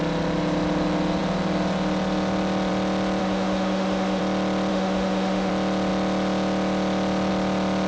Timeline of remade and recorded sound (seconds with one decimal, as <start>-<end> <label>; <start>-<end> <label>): 0.0-3.2 recorded; 3.2-4.2 remade; 4.2-4.7 recorded; 4.7-5.5 remade; 5.5-7.9 recorded